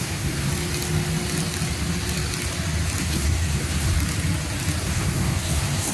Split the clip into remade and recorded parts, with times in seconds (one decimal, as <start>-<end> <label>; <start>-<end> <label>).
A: 0.0-0.5 remade; 0.5-3.0 recorded; 3.0-3.9 remade; 3.9-4.8 recorded; 4.8-5.9 remade